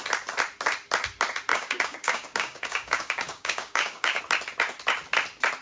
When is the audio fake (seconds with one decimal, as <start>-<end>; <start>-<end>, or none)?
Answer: 1.5-4.2

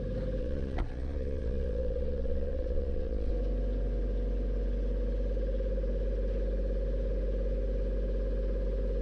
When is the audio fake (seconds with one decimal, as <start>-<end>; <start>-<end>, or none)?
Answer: 0.4-3.3

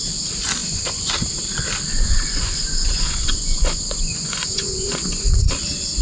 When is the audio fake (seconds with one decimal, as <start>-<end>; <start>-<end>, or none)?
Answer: 0.6-1.1; 1.9-5.5

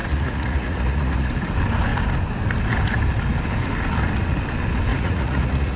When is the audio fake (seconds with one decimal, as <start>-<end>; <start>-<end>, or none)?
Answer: 0.0-1.3; 4.9-5.8